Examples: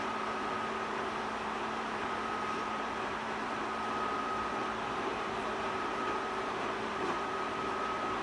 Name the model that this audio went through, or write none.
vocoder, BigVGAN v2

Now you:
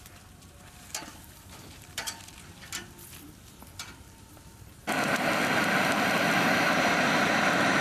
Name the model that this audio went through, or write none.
vocoder, BigVGAN v2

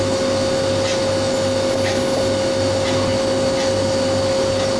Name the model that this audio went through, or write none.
none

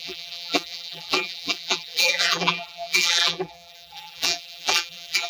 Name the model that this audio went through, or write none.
vocoder, BigVGAN v2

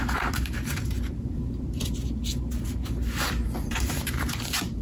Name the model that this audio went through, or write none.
vocoder, BigVGAN v2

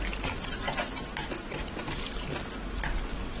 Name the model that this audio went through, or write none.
none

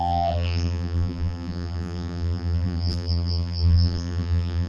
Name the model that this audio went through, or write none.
vocoder, BigVGAN v2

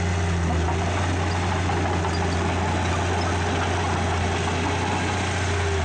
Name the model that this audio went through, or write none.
none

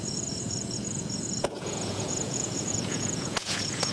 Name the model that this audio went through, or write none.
vocoder, Vocos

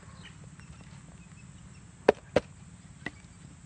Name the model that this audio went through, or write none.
none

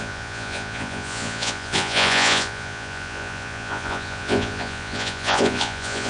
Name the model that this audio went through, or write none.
vocoder, Vocos